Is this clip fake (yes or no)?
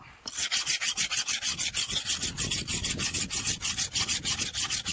no